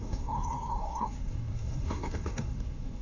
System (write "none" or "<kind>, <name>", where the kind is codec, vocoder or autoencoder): codec, SNAC